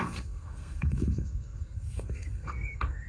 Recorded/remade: remade